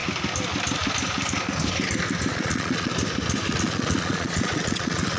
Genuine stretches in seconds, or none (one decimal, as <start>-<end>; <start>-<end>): 0.0-2.3; 2.9-3.5